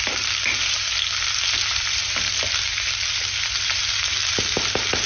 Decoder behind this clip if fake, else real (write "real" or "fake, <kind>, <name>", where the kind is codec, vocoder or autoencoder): real